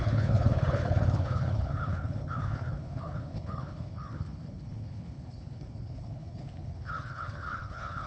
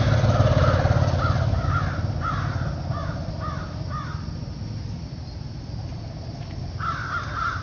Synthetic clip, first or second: first